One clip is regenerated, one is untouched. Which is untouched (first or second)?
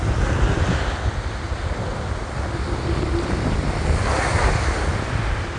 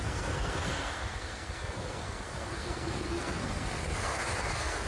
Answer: first